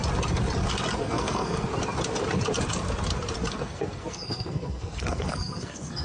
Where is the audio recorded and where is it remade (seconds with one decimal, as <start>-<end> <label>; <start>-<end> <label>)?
0.0-1.0 recorded; 1.0-1.7 remade; 1.7-3.5 recorded; 3.5-6.0 remade